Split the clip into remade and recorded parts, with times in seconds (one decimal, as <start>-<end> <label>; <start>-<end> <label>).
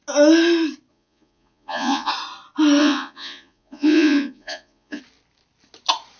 0.0-0.9 recorded; 0.9-2.1 remade; 2.1-2.8 recorded; 2.8-5.0 remade; 5.0-6.2 recorded